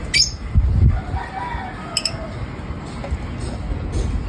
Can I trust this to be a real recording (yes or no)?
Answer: yes